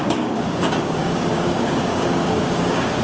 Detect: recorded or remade remade